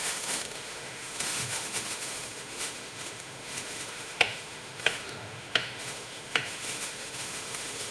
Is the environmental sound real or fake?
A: fake